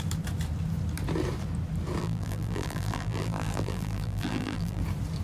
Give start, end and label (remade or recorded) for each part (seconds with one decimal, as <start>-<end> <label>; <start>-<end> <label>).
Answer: 0.0-2.0 recorded; 2.0-4.8 remade; 4.8-5.2 recorded